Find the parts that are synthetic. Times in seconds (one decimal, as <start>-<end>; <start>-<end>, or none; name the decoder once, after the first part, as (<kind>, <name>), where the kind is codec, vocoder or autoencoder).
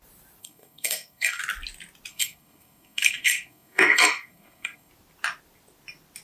0.4-1.4 (codec, SNAC); 2.1-4.9